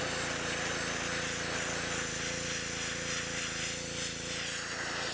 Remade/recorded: recorded